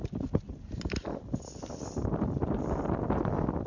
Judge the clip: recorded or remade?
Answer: recorded